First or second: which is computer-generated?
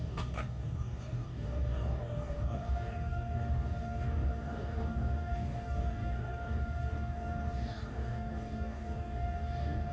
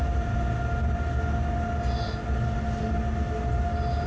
first